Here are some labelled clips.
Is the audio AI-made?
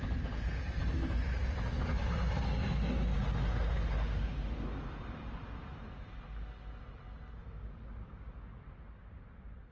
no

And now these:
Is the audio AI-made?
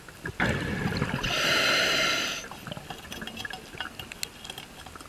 no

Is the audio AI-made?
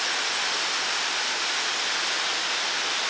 no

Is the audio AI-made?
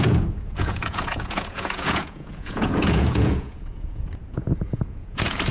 yes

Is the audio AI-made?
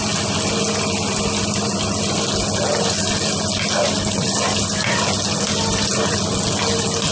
no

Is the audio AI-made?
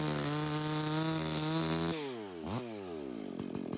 no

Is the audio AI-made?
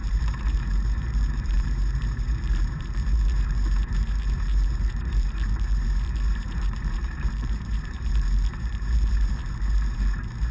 yes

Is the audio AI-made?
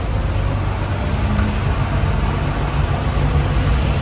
no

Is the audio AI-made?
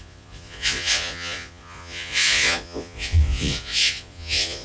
yes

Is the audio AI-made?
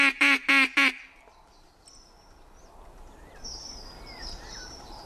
no